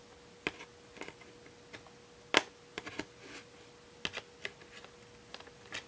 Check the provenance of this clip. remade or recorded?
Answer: recorded